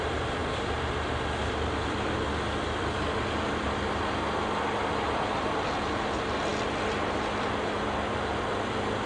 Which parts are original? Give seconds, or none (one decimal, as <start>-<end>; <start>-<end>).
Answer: 0.0-9.1